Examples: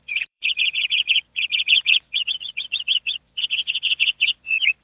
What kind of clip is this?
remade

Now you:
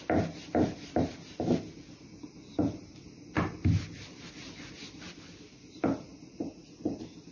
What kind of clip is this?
recorded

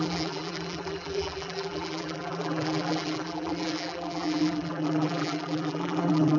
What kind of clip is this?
remade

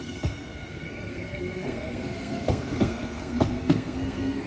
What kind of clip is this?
remade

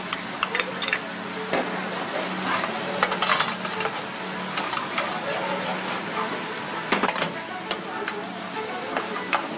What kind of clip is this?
recorded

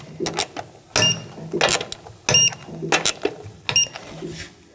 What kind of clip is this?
recorded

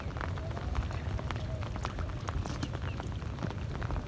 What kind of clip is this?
recorded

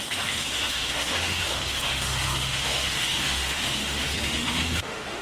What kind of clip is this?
remade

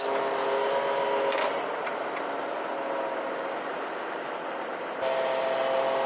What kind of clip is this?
recorded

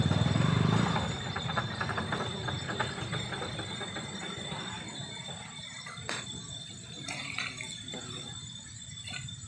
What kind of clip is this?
recorded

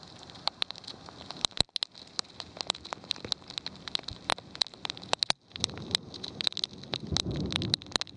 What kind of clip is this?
recorded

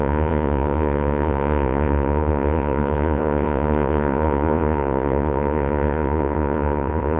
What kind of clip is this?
remade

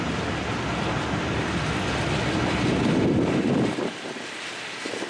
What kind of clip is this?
recorded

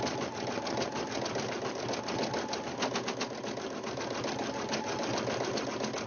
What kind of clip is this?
recorded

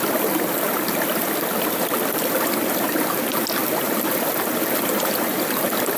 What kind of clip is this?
recorded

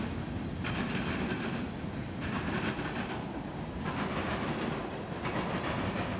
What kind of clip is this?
recorded